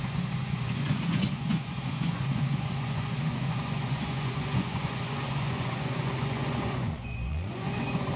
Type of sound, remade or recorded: remade